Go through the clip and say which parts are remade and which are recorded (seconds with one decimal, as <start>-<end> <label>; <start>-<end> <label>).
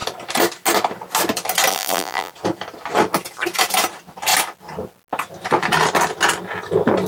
0.0-1.7 recorded; 1.7-2.3 remade; 2.3-7.1 recorded